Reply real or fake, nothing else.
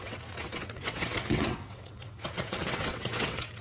fake